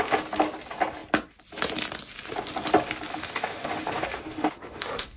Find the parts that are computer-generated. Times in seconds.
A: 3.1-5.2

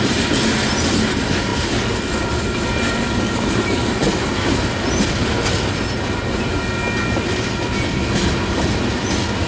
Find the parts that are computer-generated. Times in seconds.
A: none